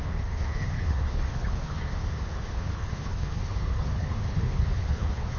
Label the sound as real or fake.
fake